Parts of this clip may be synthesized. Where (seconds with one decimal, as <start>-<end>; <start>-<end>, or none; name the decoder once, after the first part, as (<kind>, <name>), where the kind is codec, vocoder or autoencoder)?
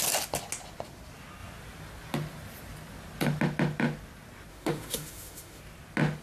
4.5-5.6 (autoencoder, DAC-VAE)